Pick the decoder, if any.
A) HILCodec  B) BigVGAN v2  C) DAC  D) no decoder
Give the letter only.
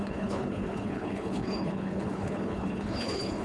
A